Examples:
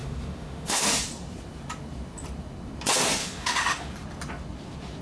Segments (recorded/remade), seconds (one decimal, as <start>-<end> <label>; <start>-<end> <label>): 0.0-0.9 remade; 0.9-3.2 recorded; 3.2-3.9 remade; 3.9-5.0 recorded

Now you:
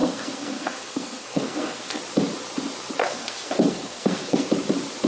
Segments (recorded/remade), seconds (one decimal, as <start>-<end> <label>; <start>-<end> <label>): 0.0-2.0 remade; 2.0-3.0 recorded; 3.0-4.5 remade; 4.5-5.1 recorded

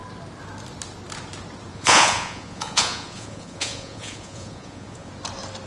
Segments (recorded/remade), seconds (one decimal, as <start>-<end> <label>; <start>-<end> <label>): 0.0-1.7 recorded; 1.7-5.1 remade; 5.1-5.7 recorded